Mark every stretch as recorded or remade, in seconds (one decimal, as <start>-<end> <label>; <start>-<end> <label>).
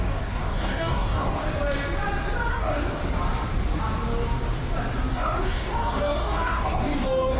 0.0-1.4 remade; 1.4-2.5 recorded; 2.5-3.0 remade; 3.0-5.1 recorded; 5.1-7.4 remade